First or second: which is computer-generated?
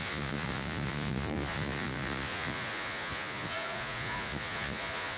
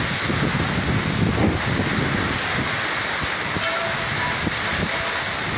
first